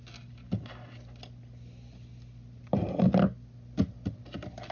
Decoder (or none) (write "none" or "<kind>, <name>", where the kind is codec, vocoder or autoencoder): none